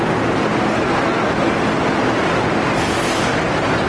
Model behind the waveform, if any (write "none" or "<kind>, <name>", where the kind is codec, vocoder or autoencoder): none